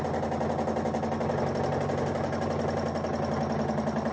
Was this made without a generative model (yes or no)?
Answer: yes